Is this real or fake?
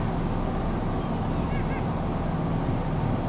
real